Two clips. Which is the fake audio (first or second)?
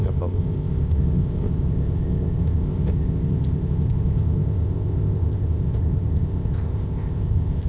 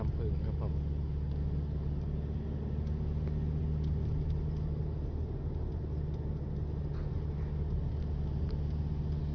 first